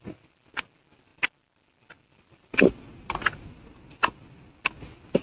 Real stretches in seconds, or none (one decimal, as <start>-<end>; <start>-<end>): 0.0-5.2

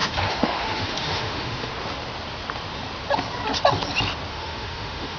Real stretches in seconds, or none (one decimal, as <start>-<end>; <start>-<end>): 1.7-4.3